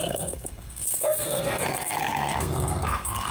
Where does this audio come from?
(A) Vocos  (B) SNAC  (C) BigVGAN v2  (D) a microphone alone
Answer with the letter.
B